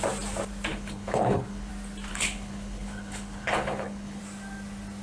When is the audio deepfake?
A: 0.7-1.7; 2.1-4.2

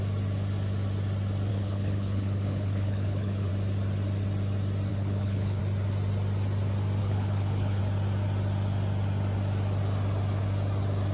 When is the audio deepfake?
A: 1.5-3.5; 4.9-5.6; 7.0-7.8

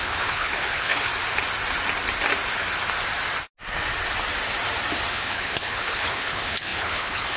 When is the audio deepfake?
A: 0.0-1.1; 5.1-7.4

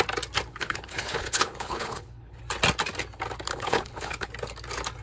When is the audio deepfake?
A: 0.5-2.4; 3.5-4.3

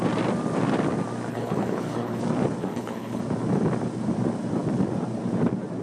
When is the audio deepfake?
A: 1.3-2.2; 2.6-3.2

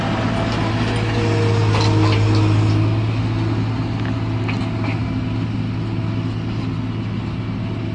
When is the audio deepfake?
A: none